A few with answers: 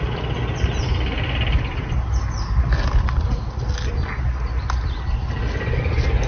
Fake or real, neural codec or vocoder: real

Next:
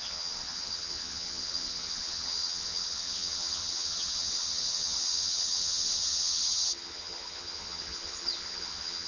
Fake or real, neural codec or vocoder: fake, vocoder, HiFi-GAN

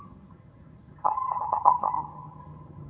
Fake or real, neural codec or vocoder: fake, vocoder, HiFi-GAN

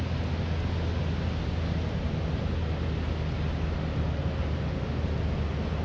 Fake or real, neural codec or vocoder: real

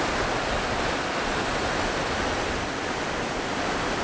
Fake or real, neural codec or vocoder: real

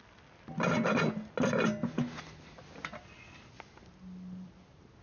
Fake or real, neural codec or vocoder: real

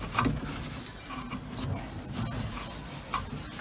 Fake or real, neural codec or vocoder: real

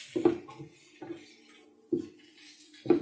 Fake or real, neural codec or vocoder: real